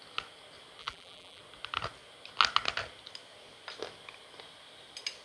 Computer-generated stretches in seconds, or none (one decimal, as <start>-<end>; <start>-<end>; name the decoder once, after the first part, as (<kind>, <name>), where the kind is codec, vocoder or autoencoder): 0.8-1.4 (vocoder, BigVGAN v2)